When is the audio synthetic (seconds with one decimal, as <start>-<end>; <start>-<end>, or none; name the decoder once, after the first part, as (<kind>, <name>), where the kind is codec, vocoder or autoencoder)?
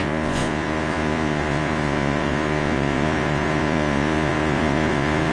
0.0-5.3 (vocoder, Vocos)